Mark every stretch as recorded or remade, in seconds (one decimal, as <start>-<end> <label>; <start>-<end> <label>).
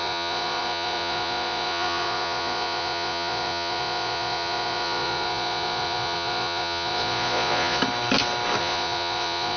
0.0-7.8 remade; 7.8-8.6 recorded; 8.6-9.6 remade